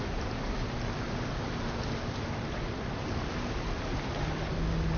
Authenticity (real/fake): real